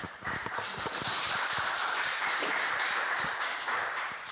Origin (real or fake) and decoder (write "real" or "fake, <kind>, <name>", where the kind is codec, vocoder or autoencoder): fake, vocoder, BigVGAN v2